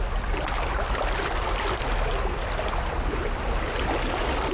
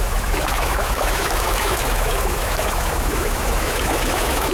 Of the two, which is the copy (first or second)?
second